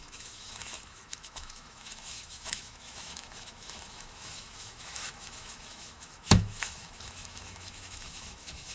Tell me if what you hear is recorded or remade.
remade